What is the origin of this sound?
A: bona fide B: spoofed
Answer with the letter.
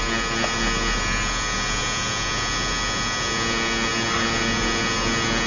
A